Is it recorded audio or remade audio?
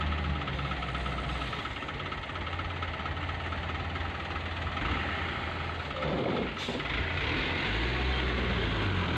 recorded